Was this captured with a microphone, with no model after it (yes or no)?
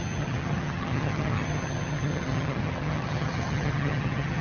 no